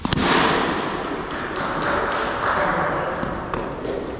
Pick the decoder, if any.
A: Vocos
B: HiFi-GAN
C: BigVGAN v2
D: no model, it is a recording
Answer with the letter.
D